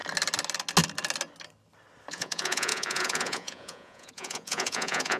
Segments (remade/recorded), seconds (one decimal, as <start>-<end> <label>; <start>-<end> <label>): 0.0-2.1 recorded; 2.1-5.2 remade